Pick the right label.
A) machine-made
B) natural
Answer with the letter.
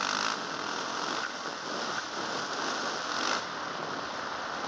B